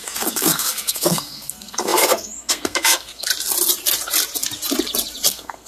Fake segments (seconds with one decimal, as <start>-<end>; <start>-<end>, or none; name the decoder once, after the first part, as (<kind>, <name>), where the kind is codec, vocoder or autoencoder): 0.0-3.3 (codec, SNAC); 5.3-5.7